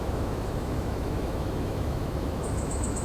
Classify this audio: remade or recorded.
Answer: remade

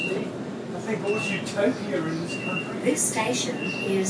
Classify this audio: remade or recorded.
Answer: recorded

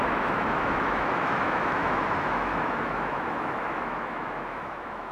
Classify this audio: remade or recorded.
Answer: remade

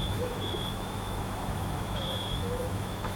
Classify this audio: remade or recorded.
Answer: remade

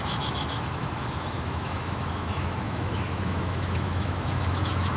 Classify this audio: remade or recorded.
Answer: remade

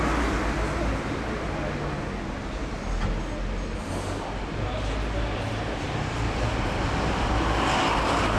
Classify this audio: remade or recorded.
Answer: recorded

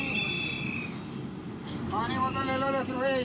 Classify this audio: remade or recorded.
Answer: recorded